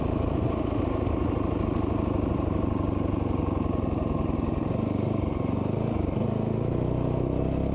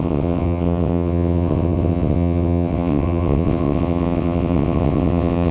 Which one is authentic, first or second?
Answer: first